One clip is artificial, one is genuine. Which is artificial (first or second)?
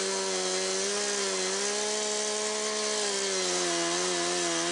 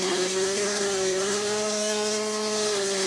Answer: second